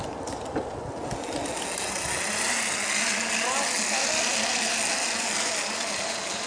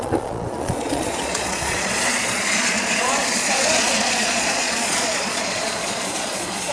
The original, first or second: first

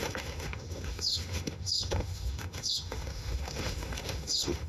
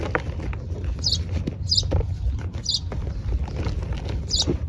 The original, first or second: second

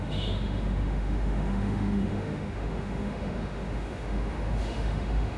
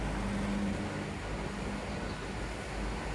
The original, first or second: second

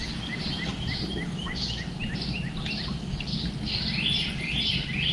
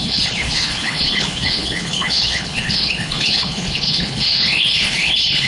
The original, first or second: first